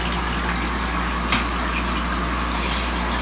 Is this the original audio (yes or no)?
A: yes